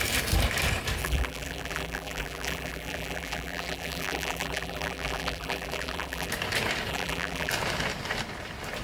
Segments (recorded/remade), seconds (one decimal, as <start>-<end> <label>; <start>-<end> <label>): 0.0-1.0 recorded; 1.0-6.3 remade; 6.3-6.9 recorded; 6.9-7.5 remade; 7.5-8.8 recorded